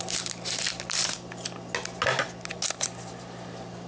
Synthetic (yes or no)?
no